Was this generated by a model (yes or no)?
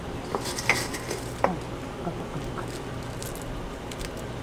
no